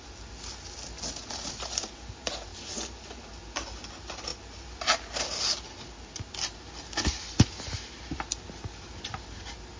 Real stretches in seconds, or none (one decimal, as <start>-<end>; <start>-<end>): 0.0-9.8

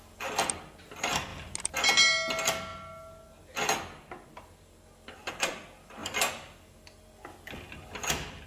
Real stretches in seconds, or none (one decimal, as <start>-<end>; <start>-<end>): 0.0-8.5

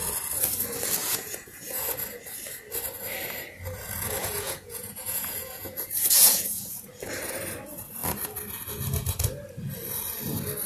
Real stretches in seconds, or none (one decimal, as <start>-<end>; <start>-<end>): 0.0-1.0; 1.8-4.2; 6.9-10.7

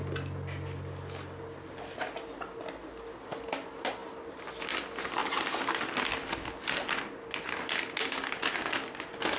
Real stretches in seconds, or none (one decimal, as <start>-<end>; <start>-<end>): 0.0-9.4

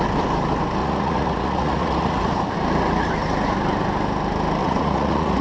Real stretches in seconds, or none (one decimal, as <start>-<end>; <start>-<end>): 0.0-0.8; 2.3-4.6

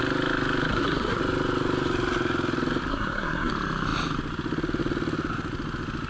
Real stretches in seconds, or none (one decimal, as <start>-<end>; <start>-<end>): 0.0-0.7; 1.2-2.9; 3.5-6.1

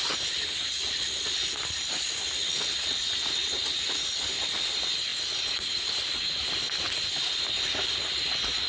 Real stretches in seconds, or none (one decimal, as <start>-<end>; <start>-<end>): 0.0-8.7